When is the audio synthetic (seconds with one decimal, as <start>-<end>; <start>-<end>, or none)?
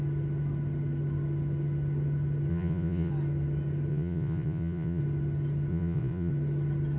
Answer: 2.5-3.1; 3.9-5.0; 5.7-6.3